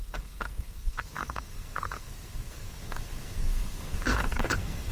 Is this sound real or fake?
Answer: fake